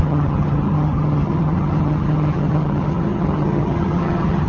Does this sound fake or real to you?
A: fake